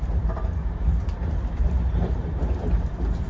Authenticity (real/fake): fake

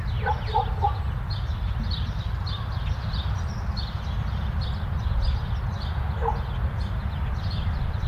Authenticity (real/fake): real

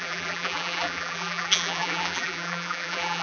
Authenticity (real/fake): fake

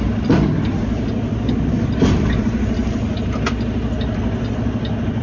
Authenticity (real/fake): real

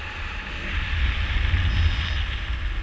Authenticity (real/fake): real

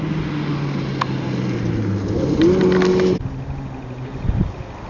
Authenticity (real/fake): real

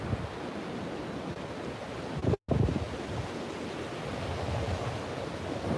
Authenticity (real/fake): real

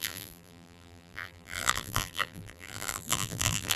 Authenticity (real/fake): fake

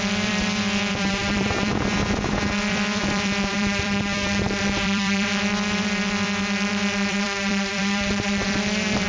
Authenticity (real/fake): fake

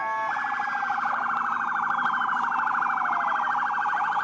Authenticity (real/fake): real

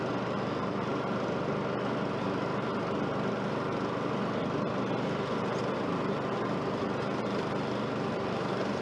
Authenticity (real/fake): real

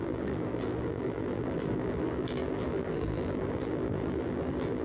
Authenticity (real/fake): fake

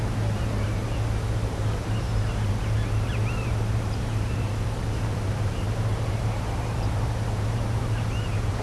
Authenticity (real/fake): fake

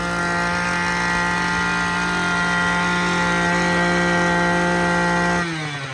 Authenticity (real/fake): real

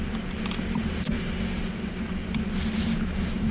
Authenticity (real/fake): real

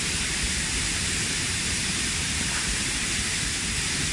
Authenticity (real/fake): fake